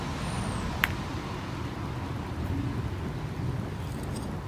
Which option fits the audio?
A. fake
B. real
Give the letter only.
B